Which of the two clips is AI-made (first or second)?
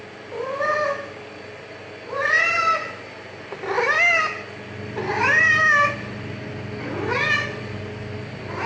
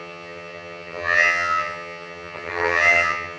second